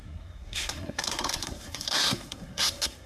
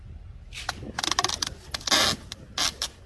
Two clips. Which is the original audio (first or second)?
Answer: second